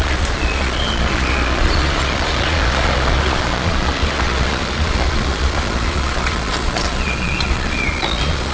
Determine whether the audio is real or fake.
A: fake